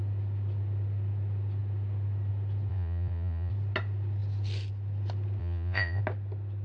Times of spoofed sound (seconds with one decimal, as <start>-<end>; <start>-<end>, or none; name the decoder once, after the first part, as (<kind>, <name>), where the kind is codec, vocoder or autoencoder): 2.7-3.5 (vocoder, Vocos); 5.4-6.0